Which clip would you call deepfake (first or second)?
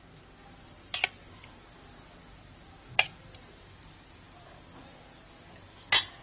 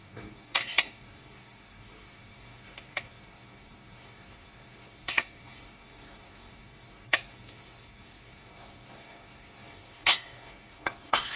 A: second